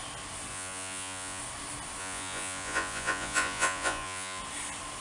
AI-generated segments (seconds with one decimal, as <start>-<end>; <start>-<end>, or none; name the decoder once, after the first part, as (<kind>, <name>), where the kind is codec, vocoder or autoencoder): 0.5-1.4 (vocoder, Vocos); 2.0-4.4